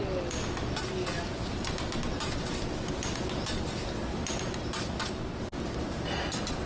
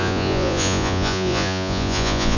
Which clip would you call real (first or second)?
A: first